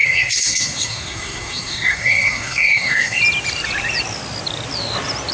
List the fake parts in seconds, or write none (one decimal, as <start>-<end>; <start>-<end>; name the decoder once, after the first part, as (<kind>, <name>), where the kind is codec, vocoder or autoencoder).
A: 0.0-3.2 (codec, SNAC)